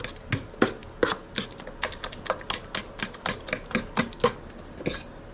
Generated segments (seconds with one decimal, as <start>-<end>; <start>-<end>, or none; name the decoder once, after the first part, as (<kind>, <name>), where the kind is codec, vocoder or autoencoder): none